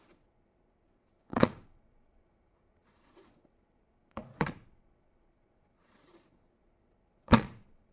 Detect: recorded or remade remade